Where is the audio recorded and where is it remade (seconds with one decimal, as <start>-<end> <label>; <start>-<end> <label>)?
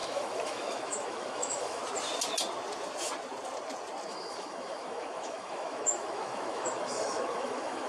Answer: 0.0-1.8 remade; 1.8-4.1 recorded; 4.1-7.9 remade